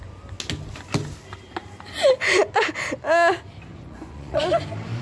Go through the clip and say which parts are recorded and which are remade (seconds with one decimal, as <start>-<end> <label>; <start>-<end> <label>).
0.0-3.7 recorded; 3.7-4.4 remade; 4.4-5.0 recorded